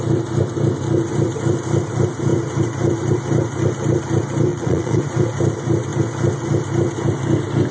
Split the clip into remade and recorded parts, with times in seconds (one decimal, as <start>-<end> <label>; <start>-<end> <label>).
0.0-4.5 recorded; 4.5-5.0 remade; 5.0-7.7 recorded

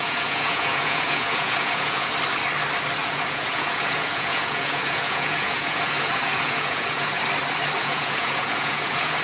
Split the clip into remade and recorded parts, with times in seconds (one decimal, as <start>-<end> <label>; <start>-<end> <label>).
0.0-2.1 remade; 2.1-3.0 recorded; 3.0-7.2 remade; 7.2-7.8 recorded; 7.8-9.2 remade

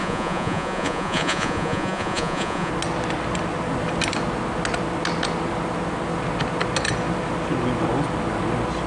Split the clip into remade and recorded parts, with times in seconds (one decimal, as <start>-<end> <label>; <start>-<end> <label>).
0.0-2.7 remade; 2.7-8.9 recorded

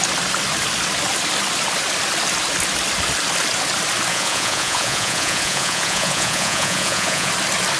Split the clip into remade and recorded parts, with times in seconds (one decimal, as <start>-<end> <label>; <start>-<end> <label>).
0.0-4.1 recorded; 4.1-7.3 remade; 7.3-7.8 recorded

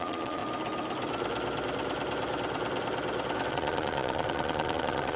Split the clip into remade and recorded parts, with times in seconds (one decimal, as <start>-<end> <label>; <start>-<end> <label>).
0.0-0.4 remade; 0.4-3.5 recorded; 3.5-5.2 remade

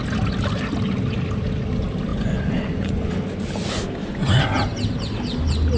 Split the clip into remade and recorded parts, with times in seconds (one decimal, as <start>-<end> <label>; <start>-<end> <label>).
0.0-2.1 recorded; 2.1-3.1 remade; 3.1-5.8 recorded

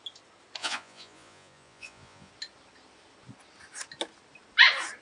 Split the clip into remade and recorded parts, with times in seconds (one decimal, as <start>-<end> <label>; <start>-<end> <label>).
0.0-0.6 recorded; 0.6-2.3 remade; 2.3-5.0 recorded